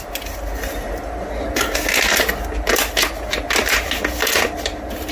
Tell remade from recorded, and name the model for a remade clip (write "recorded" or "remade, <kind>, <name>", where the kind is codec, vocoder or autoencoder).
recorded